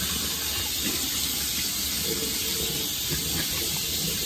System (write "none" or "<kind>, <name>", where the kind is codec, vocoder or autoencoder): none